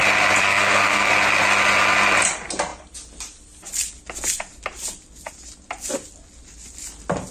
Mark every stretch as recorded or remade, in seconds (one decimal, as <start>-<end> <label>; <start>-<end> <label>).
0.0-0.4 recorded; 0.4-1.1 remade; 1.1-7.3 recorded